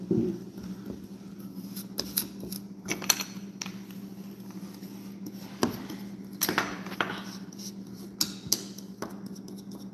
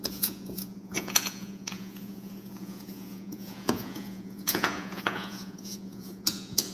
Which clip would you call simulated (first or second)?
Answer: second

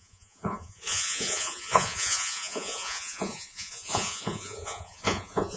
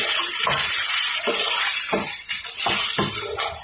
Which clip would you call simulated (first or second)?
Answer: first